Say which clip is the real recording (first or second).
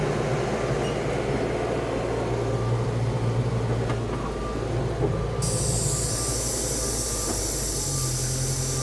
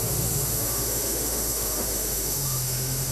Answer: first